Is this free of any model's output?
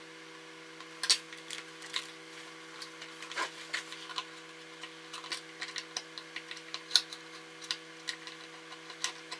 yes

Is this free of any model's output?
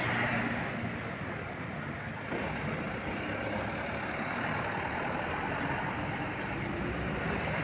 yes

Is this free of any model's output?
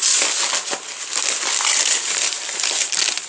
yes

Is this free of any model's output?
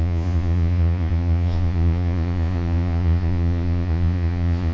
no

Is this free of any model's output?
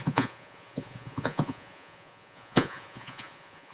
no